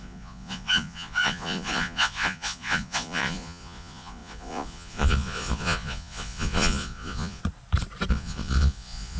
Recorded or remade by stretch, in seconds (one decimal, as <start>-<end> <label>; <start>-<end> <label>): 0.0-7.4 remade; 7.4-8.1 recorded; 8.1-9.2 remade